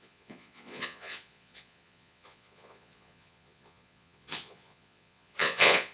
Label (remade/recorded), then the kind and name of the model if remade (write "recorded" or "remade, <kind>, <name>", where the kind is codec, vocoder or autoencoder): remade, vocoder, Vocos